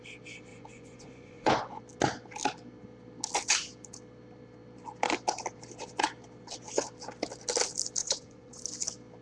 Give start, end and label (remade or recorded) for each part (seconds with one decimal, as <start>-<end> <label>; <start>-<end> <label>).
0.0-0.5 recorded; 0.5-1.8 remade; 1.8-8.0 recorded; 8.0-8.6 remade; 8.6-9.2 recorded